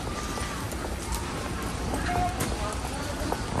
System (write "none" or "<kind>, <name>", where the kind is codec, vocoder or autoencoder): none